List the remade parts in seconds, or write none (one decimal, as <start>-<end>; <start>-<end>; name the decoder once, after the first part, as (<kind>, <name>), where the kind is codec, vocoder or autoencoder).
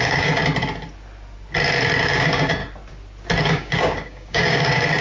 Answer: 0.0-0.4 (codec, DAC); 2.0-2.6; 3.4-5.0